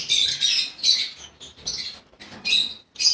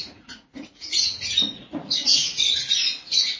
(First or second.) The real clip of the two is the first